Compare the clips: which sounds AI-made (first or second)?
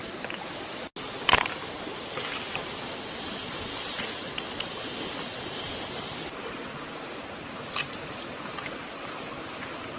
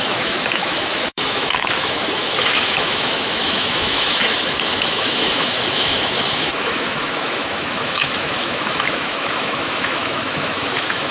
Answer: second